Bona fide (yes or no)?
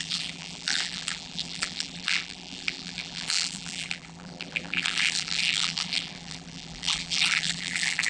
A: no